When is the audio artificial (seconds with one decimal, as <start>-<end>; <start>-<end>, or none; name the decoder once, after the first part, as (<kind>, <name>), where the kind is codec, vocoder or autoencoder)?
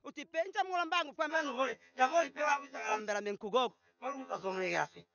1.3-3.0 (vocoder, HiFi-GAN); 3.7-5.1